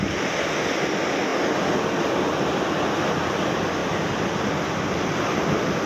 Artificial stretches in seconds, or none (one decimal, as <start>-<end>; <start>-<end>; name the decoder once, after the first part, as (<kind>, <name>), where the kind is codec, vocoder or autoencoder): none